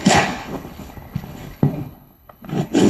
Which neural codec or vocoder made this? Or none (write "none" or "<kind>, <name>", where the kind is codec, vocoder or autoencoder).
codec, HILCodec